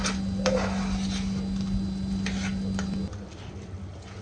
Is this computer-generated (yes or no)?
no